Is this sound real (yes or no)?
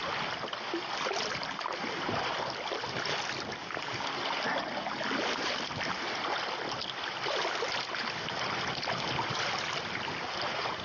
yes